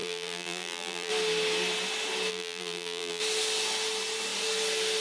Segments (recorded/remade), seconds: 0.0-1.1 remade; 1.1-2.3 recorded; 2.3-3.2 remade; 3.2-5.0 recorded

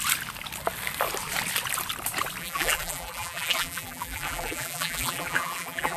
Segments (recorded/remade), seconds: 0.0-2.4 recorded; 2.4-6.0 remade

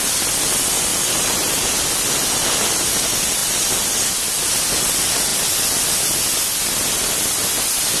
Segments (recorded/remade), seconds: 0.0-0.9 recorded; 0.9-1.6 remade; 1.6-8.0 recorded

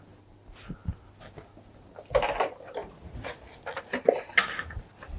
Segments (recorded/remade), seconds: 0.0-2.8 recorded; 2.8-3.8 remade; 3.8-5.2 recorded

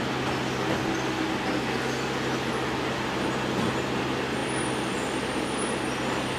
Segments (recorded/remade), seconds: 0.0-6.4 recorded